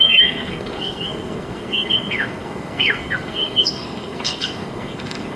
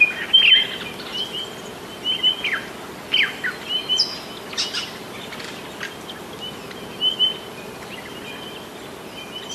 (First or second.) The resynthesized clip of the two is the first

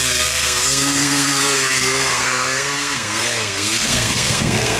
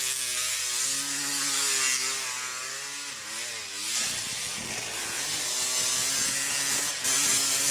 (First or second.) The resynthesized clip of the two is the first